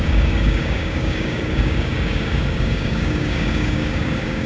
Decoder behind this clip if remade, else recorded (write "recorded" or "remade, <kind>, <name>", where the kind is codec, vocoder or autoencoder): remade, codec, DAC